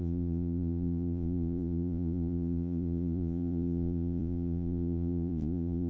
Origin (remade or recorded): remade